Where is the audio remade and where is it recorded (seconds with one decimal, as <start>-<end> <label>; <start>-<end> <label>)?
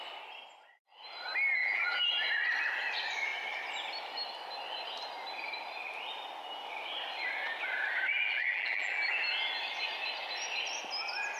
0.0-1.6 recorded; 1.6-2.1 remade; 2.1-8.1 recorded; 8.1-9.1 remade; 9.1-11.4 recorded